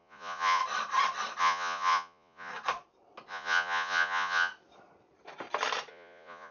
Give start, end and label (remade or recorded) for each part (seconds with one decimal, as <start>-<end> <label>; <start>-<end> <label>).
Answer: 0.0-0.6 remade; 0.6-1.4 recorded; 1.4-2.5 remade; 2.5-3.3 recorded; 3.3-4.5 remade; 4.5-5.9 recorded; 5.9-6.5 remade